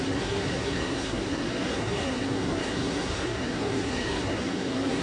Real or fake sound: fake